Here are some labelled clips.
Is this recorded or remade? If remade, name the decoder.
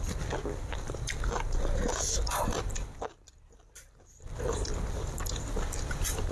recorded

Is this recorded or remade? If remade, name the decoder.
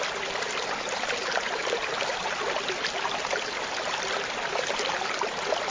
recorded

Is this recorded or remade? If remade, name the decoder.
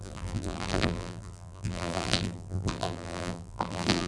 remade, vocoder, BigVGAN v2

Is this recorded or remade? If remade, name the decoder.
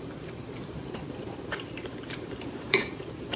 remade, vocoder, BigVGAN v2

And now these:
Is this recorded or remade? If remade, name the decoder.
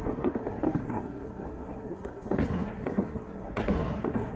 remade, codec, SNAC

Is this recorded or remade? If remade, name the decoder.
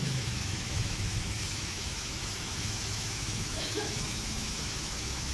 remade, autoencoder, DAC-VAE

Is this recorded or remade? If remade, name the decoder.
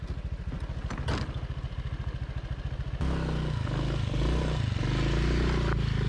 recorded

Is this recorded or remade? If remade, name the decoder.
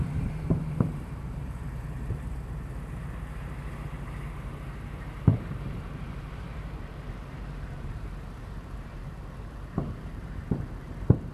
remade, vocoder, BigVGAN v2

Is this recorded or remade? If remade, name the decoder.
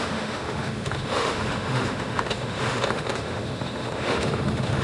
remade, autoencoder, DAC-VAE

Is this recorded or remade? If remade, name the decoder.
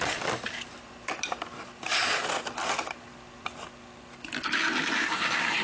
recorded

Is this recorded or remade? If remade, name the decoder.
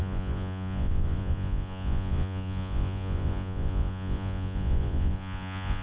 remade, vocoder, Vocos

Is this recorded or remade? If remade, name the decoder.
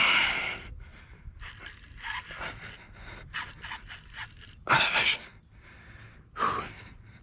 recorded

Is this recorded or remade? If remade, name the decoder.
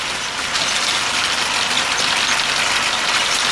recorded